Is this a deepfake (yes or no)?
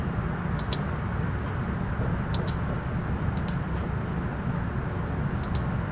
no